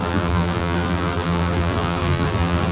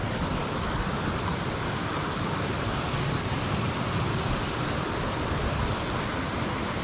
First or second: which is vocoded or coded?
first